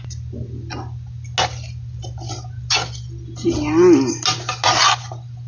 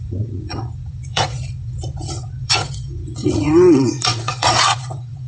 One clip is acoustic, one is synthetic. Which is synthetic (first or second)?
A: second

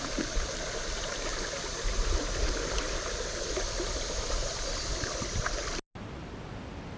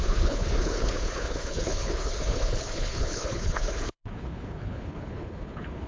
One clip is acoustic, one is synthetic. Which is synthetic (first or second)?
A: second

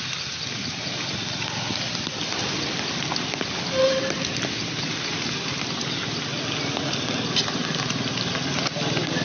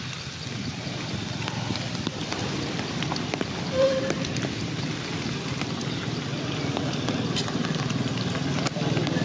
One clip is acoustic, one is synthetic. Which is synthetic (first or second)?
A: second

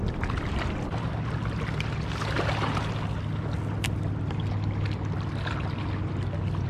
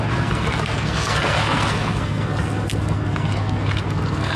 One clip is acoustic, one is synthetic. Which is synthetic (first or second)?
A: second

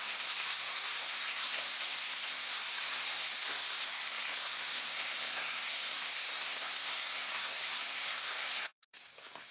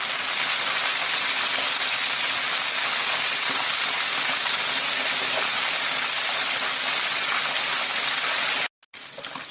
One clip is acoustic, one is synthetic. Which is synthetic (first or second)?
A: first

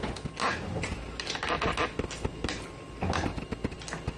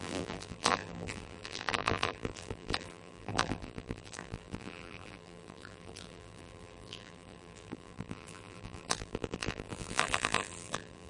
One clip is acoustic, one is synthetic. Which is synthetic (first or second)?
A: second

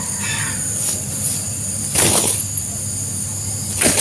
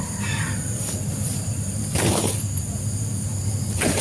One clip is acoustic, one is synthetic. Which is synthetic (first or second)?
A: second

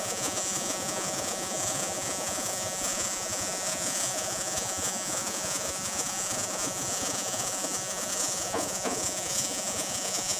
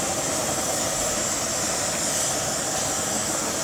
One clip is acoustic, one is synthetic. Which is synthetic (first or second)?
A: first